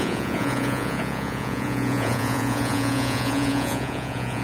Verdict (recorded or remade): remade